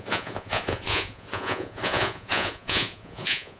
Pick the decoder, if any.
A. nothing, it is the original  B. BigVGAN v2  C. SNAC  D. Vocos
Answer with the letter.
D